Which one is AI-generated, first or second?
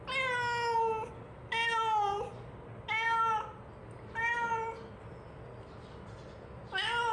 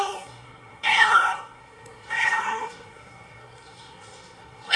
second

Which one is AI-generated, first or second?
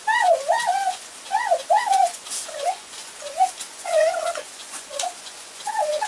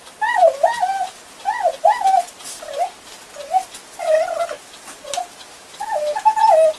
first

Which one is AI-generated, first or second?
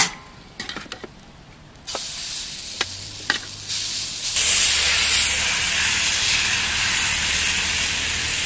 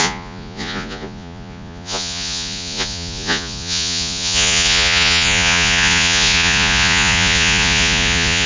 second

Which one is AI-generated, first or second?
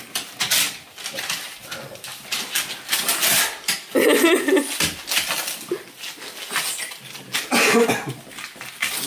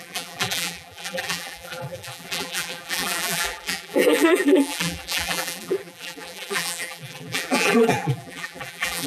second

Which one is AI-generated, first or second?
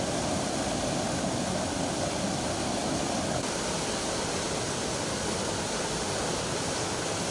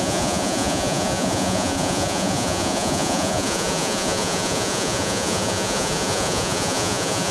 second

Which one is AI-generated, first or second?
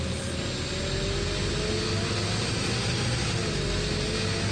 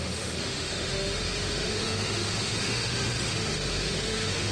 second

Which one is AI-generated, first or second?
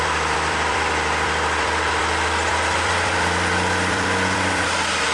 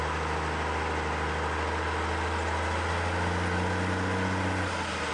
first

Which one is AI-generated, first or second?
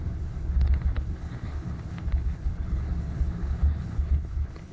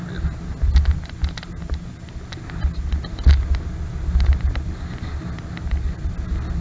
first